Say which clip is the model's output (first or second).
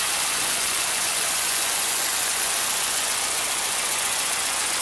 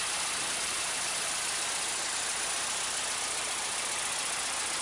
first